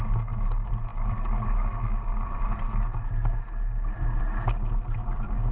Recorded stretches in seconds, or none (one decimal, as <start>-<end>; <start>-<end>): 0.0-5.5